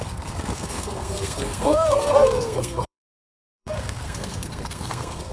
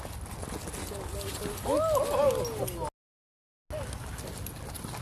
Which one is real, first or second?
second